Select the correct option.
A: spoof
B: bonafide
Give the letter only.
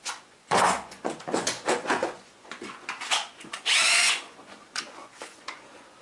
A